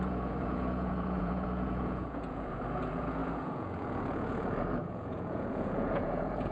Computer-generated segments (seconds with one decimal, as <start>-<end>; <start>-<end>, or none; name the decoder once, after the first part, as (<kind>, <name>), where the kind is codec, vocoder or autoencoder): 0.0-6.5 (vocoder, Vocos)